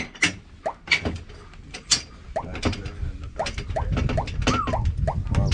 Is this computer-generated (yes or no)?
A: no